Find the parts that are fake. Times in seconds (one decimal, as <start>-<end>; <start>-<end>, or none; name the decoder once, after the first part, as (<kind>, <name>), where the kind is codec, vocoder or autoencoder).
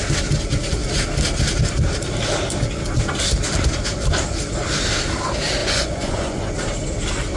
5.6-6.5 (vocoder, Vocos)